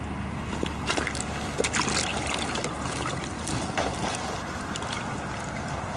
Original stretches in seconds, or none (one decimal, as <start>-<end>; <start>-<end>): 0.0-6.0